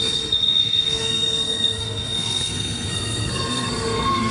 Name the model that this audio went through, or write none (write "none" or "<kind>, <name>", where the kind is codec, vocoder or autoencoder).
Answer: codec, SNAC